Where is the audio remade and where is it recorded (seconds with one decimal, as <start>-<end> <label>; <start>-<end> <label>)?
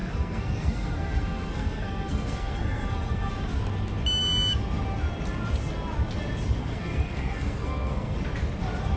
0.0-3.3 remade; 3.3-6.6 recorded; 6.6-8.2 remade; 8.2-9.0 recorded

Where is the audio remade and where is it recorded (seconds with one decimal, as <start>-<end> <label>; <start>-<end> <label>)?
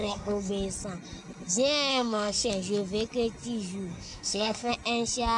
0.0-0.5 remade; 0.5-1.9 recorded; 1.9-2.5 remade; 2.5-3.9 recorded; 3.9-4.7 remade; 4.7-5.4 recorded